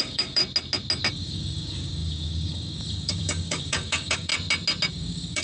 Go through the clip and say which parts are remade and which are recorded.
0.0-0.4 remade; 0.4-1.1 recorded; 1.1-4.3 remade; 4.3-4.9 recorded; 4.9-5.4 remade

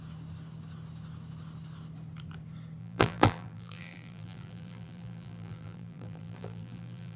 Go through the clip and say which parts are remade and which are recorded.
0.0-2.8 recorded; 2.8-7.2 remade

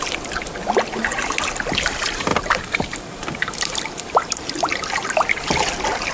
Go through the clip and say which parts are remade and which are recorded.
0.0-2.3 recorded; 2.3-4.5 remade; 4.5-6.1 recorded